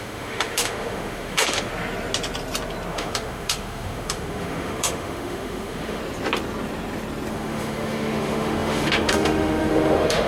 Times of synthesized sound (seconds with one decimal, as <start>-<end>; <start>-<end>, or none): 0.0-1.7; 2.9-6.0; 7.3-10.3